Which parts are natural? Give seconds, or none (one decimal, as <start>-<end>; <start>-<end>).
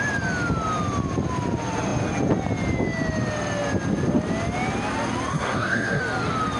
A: 0.0-5.3; 6.0-6.6